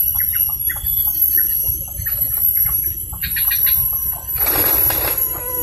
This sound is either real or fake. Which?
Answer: real